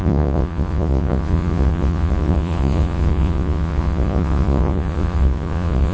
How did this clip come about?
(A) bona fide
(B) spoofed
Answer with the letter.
B